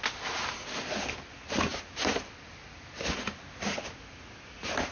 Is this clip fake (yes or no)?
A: no